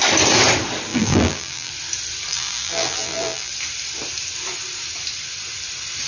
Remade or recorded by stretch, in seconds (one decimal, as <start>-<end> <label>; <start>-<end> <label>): 0.0-0.9 recorded; 0.9-1.7 remade; 1.7-2.3 recorded; 2.3-3.5 remade; 3.5-6.1 recorded

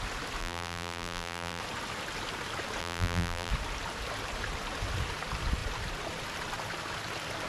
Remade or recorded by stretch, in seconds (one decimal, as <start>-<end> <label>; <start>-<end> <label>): 0.0-0.4 recorded; 0.4-1.6 remade; 1.6-2.8 recorded; 2.8-3.5 remade; 3.5-7.5 recorded

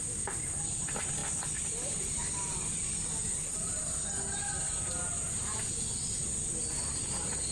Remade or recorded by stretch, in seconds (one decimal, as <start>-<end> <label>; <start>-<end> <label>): 0.0-4.6 remade; 4.6-6.2 recorded; 6.2-7.5 remade